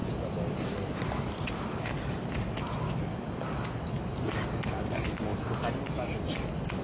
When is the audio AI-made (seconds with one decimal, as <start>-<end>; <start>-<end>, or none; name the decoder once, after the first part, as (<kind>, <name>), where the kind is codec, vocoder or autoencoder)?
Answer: 5.3-5.9 (vocoder, BigVGAN v2)